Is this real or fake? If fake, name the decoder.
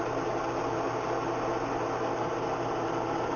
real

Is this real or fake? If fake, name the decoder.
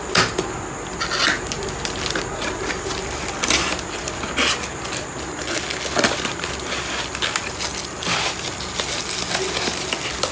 real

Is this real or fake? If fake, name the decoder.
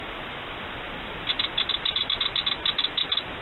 real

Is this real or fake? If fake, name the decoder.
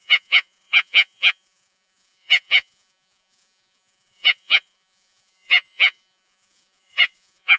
fake, vocoder, Vocos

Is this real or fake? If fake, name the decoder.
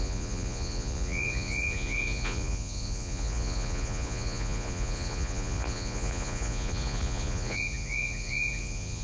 fake, vocoder, Vocos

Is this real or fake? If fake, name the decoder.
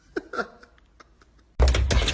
real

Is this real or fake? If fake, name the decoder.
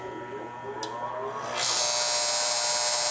real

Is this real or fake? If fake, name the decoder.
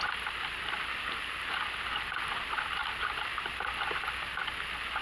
real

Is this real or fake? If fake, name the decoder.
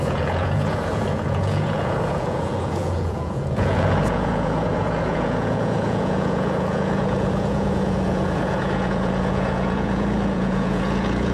fake, vocoder, Vocos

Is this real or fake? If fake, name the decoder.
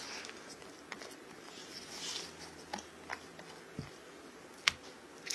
real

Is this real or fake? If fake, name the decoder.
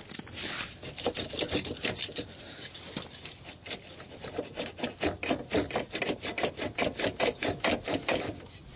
real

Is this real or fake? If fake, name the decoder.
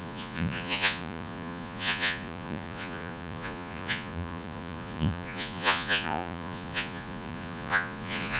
fake, vocoder, Vocos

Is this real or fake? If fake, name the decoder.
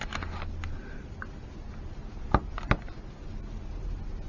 real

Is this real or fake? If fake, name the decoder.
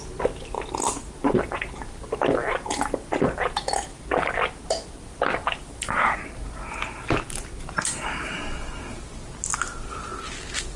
real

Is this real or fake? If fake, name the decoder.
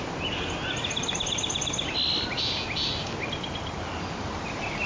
real